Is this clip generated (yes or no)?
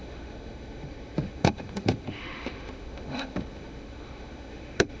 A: yes